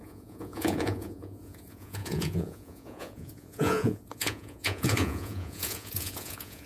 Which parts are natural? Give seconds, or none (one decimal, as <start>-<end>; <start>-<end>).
none